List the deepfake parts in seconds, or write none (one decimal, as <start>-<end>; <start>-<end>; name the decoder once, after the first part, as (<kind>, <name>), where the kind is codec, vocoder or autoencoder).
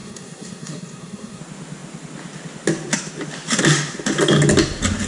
0.0-1.4 (codec, SNAC)